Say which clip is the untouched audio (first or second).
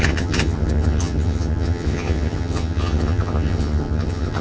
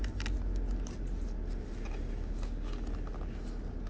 second